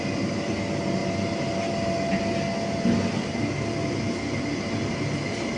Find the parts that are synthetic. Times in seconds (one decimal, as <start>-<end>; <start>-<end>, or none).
none